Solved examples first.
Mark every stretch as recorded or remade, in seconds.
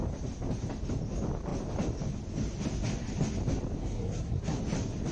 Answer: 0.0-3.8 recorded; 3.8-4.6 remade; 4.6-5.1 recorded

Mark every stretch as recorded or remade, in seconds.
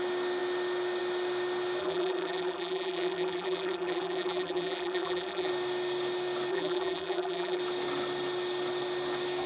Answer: 0.0-1.8 recorded; 1.8-5.5 remade; 5.5-6.5 recorded; 6.5-7.6 remade; 7.6-9.5 recorded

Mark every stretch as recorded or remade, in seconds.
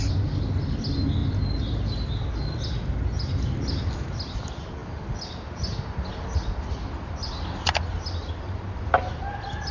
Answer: 0.0-9.7 recorded